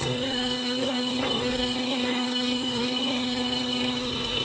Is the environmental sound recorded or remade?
remade